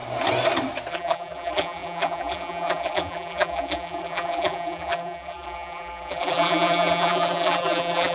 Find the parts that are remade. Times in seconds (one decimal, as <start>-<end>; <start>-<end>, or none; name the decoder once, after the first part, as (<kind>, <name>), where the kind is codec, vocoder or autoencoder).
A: 0.9-8.1 (vocoder, BigVGAN v2)

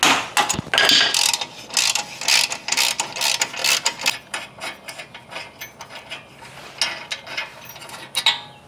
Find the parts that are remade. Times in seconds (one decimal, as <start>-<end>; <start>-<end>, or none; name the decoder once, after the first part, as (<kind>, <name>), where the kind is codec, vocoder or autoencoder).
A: none

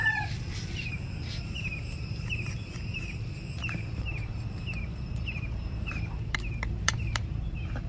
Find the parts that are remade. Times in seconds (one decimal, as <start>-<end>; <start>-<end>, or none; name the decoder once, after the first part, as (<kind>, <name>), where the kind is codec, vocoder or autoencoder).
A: 1.3-7.9 (vocoder, BigVGAN v2)